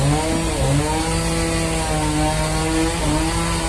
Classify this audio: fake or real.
real